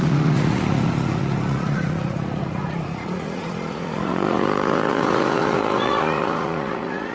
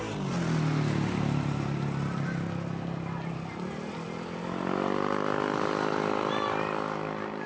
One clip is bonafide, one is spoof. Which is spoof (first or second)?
first